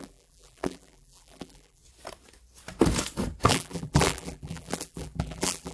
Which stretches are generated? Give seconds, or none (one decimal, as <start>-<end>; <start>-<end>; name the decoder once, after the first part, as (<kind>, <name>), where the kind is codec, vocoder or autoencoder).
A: 0.0-1.8 (vocoder, BigVGAN v2); 3.5-5.7